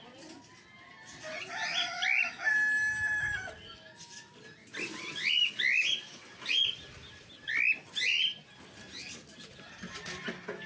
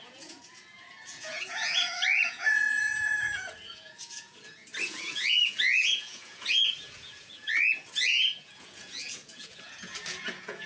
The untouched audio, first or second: first